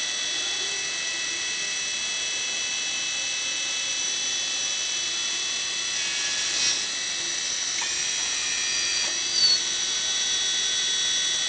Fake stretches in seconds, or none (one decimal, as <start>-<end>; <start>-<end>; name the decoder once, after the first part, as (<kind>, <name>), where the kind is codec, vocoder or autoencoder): none